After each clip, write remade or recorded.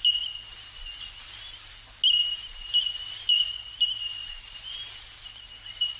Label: recorded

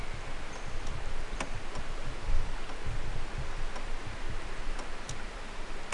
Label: recorded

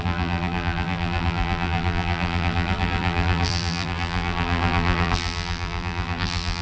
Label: remade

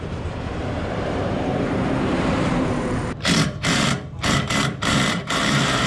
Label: remade